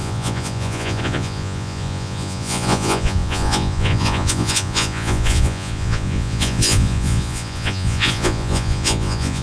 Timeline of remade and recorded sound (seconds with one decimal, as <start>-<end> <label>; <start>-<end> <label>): 0.0-9.4 remade